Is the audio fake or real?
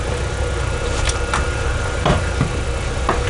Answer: real